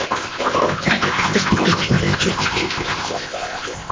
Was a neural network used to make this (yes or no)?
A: yes